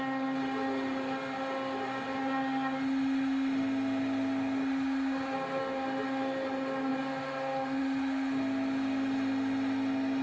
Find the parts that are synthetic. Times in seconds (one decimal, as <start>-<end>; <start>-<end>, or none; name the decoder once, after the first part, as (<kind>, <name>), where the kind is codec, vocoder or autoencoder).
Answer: none